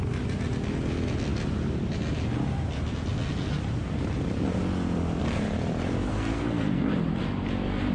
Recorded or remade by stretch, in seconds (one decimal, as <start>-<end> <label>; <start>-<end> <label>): 0.0-6.1 recorded; 6.1-6.9 remade; 6.9-7.9 recorded